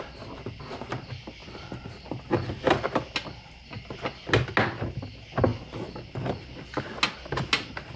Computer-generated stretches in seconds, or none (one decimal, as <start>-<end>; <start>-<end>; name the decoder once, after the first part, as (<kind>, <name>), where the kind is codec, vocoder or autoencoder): 1.4-2.8 (vocoder, BigVGAN v2)